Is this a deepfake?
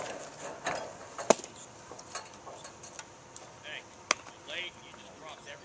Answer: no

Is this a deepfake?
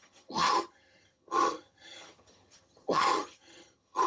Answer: yes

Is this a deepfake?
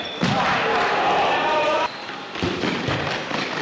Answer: no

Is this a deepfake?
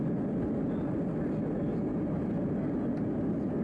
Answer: no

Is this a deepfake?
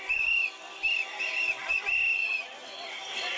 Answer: no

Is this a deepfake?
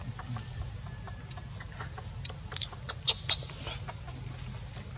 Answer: no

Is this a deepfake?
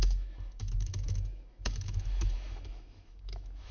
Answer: yes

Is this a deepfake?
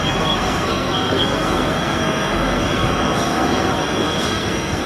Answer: yes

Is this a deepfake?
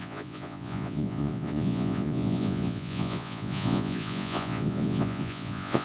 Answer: yes